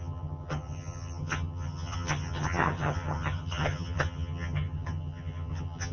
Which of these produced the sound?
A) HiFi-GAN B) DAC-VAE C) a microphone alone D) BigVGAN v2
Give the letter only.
A